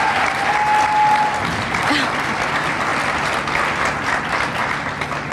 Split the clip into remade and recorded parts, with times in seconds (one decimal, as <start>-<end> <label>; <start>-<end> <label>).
0.0-5.3 recorded